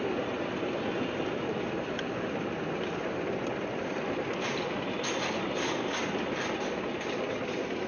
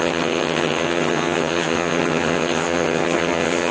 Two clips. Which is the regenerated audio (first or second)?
second